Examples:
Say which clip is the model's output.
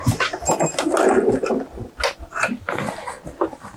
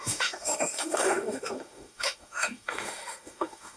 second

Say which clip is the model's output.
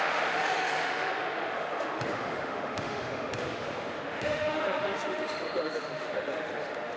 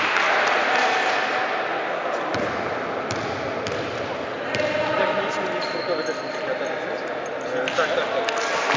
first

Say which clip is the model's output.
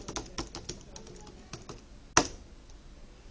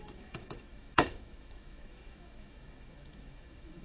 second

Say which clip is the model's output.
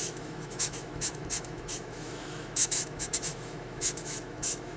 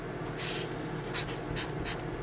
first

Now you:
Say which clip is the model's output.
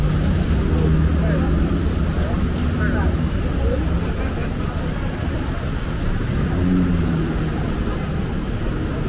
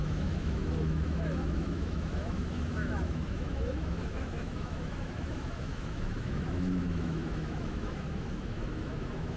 second